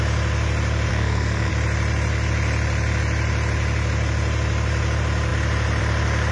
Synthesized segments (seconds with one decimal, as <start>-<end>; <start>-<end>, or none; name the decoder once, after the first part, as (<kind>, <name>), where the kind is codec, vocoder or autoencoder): 0.9-1.5 (codec, SNAC)